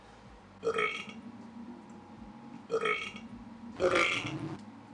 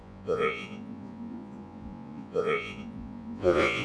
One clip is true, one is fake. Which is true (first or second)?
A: first